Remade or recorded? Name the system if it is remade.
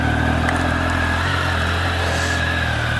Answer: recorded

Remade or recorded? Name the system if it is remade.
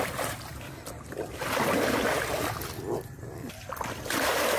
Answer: recorded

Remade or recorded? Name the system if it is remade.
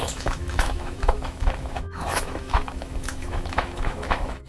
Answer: remade, autoencoder, DAC-VAE